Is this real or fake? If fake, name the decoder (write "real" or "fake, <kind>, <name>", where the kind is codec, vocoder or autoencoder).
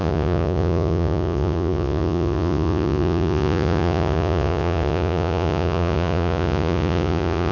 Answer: fake, vocoder, Vocos